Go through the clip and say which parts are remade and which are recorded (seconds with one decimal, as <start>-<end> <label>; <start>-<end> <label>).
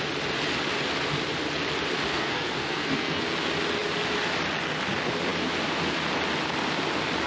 0.0-2.1 recorded; 2.1-3.2 remade; 3.2-7.3 recorded